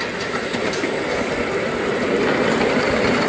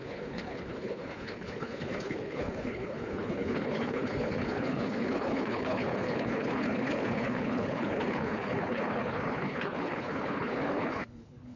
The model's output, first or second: second